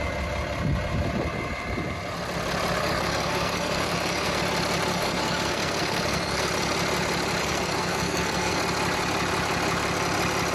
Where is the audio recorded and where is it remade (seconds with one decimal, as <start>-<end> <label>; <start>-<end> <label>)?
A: 0.0-2.8 recorded; 2.8-4.4 remade; 4.4-4.9 recorded; 4.9-6.5 remade; 6.5-7.4 recorded; 7.4-8.6 remade; 8.6-10.5 recorded